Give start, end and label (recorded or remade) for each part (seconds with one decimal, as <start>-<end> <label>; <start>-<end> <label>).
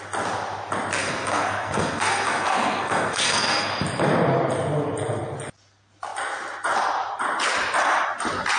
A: 0.0-1.0 recorded; 1.0-3.7 remade; 3.7-8.6 recorded